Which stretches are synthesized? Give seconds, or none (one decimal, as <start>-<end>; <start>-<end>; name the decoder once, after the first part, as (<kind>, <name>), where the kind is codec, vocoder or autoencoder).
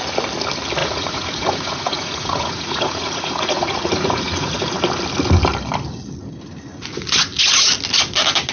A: 0.8-4.7 (vocoder, Vocos)